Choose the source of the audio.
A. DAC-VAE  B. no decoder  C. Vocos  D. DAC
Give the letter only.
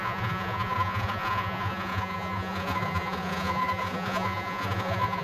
C